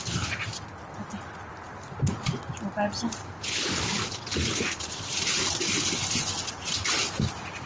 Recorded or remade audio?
recorded